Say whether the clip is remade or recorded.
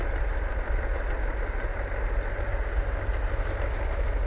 recorded